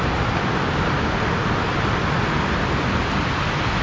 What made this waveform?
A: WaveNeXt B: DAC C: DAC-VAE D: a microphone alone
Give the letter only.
D